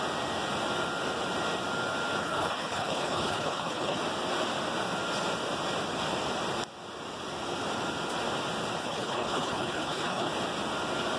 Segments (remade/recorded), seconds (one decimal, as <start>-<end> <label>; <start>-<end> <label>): 0.0-2.2 recorded; 2.2-4.0 remade; 4.0-8.8 recorded; 8.8-10.3 remade; 10.3-11.2 recorded